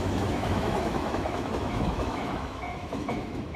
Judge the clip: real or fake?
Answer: fake